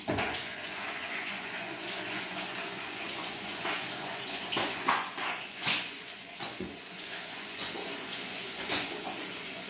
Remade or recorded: remade